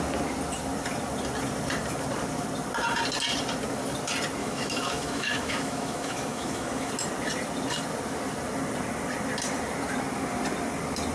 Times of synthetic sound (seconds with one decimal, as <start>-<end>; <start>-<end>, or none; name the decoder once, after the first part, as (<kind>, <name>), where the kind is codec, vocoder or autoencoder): 4.4-6.9 (autoencoder, DAC-VAE)